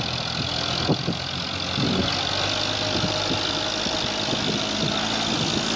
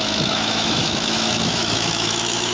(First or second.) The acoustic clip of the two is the first